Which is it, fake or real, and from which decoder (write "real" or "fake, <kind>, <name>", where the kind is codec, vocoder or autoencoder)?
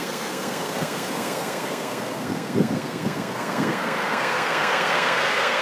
fake, codec, SNAC